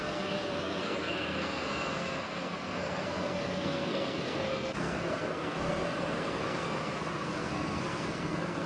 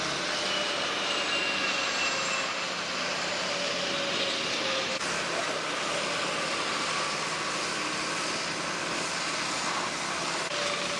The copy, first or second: first